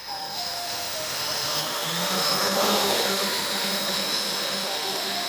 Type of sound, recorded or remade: remade